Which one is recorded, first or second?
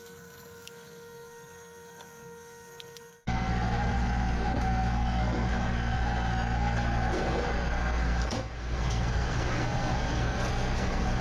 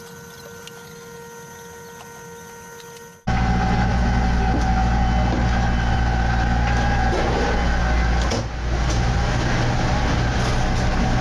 second